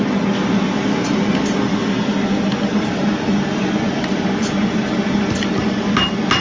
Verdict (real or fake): real